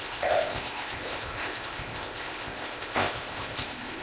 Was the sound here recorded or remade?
remade